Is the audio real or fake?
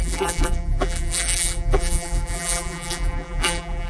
fake